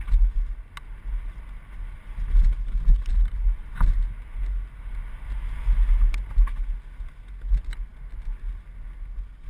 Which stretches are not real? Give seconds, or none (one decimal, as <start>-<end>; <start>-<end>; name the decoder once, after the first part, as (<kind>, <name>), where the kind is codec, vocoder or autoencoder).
none